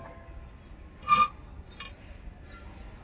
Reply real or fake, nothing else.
real